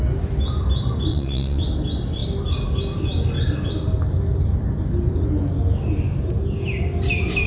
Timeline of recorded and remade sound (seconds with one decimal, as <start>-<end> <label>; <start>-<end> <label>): 0.0-1.1 recorded; 1.1-1.6 remade; 1.6-7.5 recorded